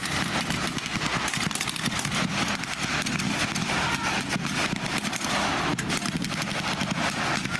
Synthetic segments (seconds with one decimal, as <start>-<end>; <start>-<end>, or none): none